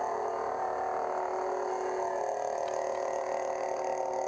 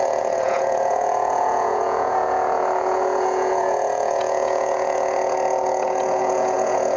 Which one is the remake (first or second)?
second